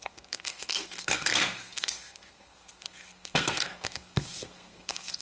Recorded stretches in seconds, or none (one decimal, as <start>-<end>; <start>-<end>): none